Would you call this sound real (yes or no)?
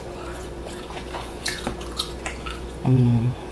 no